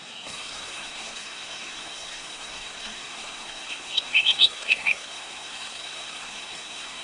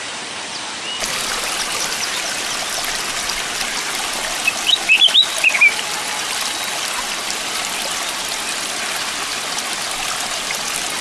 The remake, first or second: first